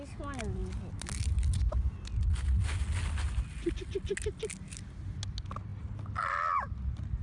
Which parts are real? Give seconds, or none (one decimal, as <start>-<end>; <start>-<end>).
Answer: 0.0-7.2